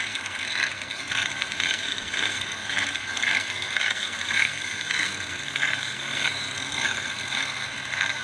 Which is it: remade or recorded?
remade